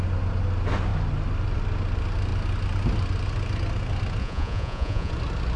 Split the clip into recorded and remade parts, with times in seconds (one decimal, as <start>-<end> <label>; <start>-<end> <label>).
0.0-4.2 recorded; 4.2-5.1 remade; 5.1-5.6 recorded